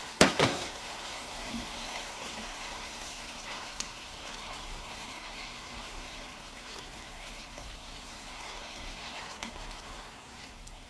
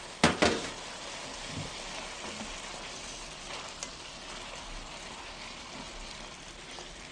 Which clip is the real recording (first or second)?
second